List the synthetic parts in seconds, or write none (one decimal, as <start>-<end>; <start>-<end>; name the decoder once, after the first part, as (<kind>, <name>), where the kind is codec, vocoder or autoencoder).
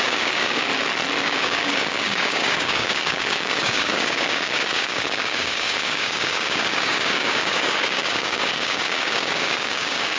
0.0-0.7 (codec, DAC); 1.2-10.2